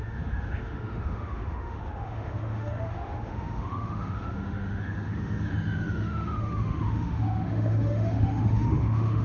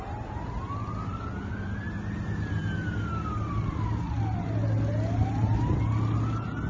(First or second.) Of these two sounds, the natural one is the second